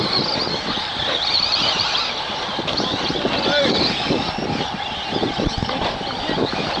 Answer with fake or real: real